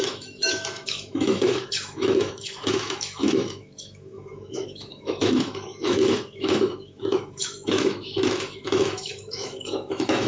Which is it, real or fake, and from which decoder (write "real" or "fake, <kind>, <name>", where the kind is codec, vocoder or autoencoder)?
fake, autoencoder, DAC-VAE